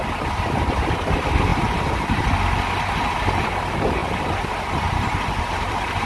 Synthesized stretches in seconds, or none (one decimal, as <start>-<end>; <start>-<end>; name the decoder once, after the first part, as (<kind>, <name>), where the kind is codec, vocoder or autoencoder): none